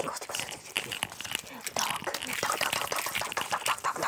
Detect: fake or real real